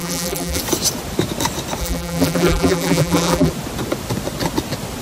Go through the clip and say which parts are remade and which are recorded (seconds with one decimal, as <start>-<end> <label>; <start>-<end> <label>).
0.0-0.6 remade; 0.6-1.8 recorded; 1.8-3.5 remade; 3.5-5.0 recorded